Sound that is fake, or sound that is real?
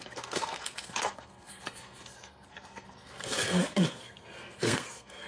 fake